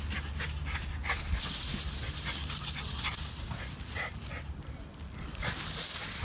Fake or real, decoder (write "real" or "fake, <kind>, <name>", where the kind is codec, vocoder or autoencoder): real